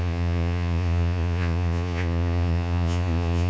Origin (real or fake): fake